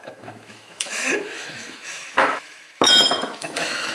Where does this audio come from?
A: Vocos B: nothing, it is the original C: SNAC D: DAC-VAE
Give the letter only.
D